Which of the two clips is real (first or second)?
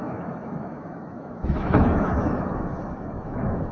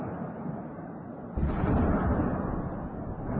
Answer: second